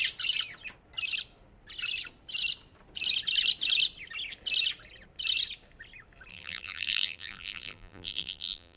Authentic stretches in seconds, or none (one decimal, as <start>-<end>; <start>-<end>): 0.0-6.3